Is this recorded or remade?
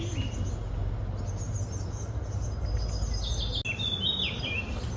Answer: recorded